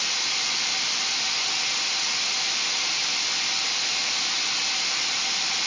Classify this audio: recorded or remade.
recorded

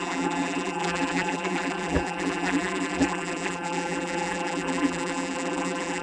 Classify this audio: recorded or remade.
remade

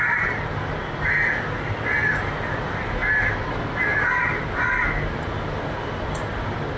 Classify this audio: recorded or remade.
recorded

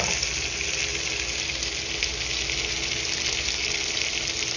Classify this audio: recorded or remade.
recorded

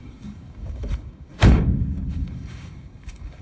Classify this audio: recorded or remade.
remade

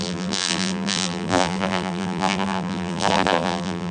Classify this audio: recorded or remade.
remade